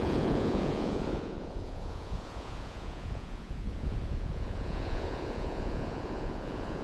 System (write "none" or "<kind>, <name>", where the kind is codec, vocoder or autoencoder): vocoder, Vocos